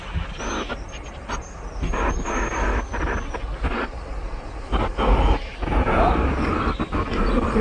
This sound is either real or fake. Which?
real